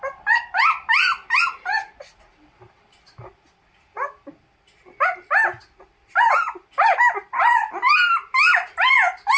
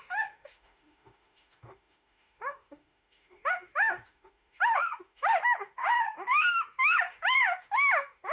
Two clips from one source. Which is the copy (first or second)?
second